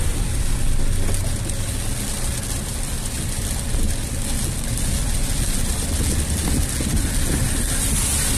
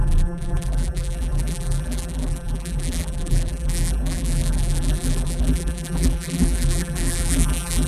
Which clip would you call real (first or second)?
first